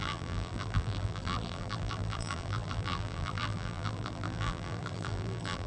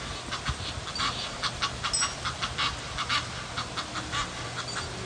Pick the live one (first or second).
second